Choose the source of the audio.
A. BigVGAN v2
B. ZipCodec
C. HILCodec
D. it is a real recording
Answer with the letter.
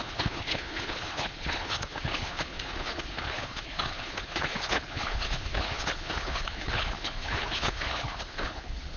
C